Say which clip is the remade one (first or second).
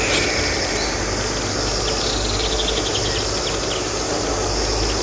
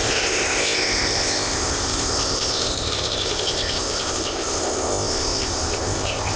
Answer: second